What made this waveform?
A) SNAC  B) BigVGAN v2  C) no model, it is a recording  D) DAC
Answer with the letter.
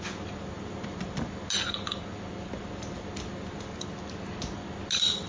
C